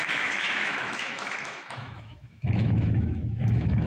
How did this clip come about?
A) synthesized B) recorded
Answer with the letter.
A